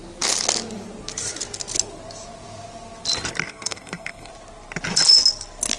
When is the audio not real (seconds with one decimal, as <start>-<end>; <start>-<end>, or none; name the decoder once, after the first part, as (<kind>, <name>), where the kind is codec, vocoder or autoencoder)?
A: 3.5-4.3 (codec, SNAC)